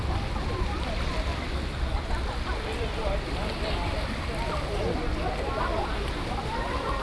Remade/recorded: recorded